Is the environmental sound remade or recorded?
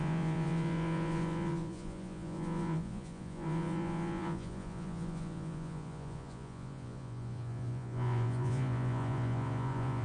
remade